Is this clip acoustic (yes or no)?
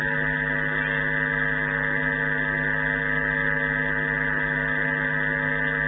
yes